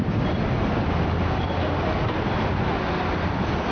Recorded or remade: recorded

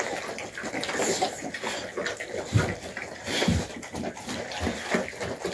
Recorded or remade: recorded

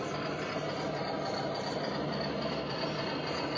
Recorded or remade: recorded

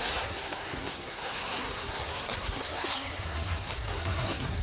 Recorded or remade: remade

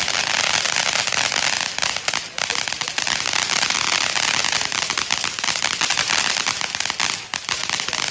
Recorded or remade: recorded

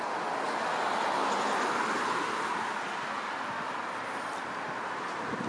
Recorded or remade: recorded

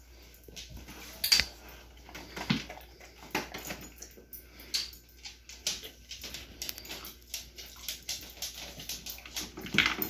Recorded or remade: recorded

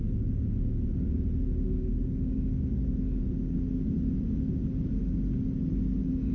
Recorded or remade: recorded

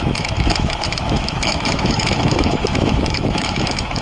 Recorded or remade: remade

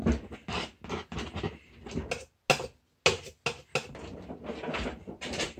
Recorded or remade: recorded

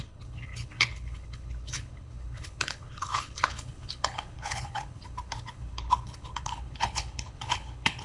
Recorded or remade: remade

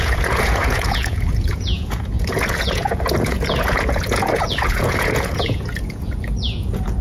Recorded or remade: remade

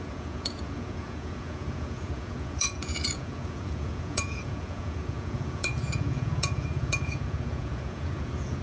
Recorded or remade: remade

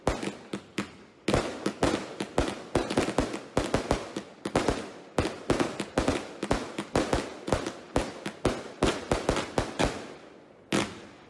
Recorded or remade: recorded